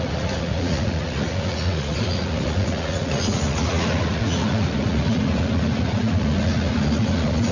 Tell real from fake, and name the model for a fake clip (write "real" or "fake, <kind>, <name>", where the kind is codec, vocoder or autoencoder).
fake, vocoder, Vocos